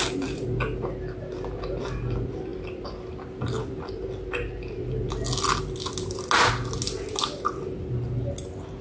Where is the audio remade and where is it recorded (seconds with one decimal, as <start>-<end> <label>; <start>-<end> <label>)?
0.0-8.8 recorded